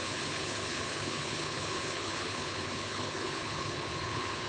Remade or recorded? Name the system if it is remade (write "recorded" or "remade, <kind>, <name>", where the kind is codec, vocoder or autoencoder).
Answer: remade, codec, HILCodec